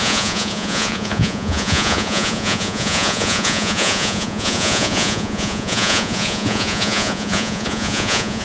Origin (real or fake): fake